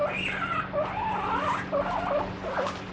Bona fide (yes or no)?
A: yes